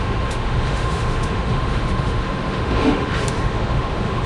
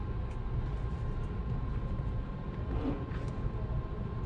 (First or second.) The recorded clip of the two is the second